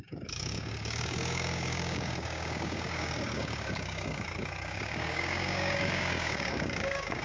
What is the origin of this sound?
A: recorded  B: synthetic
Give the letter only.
B